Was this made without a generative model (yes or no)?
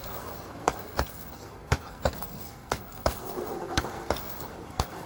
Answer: no